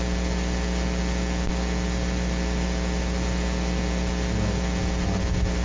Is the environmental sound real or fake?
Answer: real